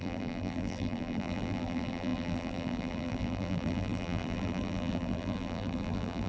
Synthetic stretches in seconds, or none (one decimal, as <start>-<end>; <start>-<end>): 0.0-6.3